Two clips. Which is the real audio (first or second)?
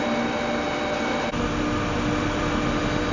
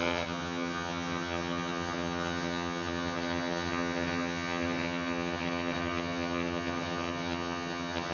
first